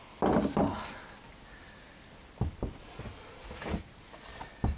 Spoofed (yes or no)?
no